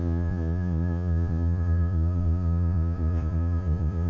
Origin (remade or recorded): remade